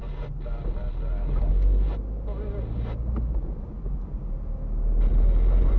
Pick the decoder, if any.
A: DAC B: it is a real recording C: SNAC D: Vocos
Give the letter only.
B